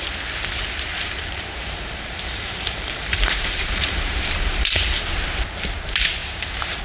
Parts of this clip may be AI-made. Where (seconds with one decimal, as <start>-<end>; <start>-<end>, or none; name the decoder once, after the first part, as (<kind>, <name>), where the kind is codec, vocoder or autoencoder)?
0.9-5.0 (vocoder, BigVGAN v2); 6.2-6.8